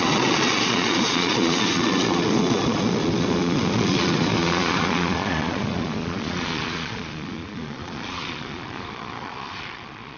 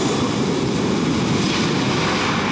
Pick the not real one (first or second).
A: first